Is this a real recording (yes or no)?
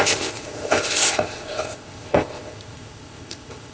no